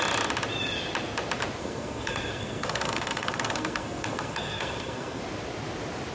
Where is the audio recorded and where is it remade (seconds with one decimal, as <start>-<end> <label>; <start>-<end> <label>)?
0.0-1.6 recorded; 1.6-5.2 remade; 5.2-6.1 recorded